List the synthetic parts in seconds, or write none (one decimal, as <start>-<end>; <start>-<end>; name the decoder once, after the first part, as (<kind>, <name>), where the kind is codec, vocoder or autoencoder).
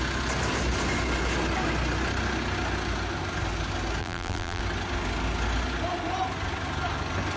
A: 4.0-4.6 (vocoder, BigVGAN v2)